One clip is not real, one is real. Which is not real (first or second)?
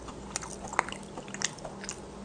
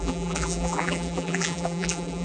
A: second